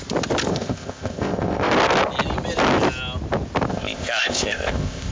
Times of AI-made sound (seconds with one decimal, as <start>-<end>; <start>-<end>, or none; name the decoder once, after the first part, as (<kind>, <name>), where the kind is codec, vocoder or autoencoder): 0.5-1.7 (codec, ZipCodec); 3.7-5.1